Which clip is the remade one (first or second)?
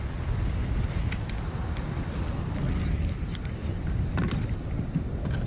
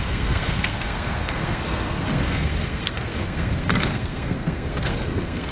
second